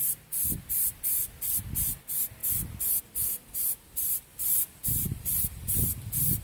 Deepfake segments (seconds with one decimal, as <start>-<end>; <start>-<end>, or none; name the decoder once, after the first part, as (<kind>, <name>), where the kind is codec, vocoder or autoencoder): none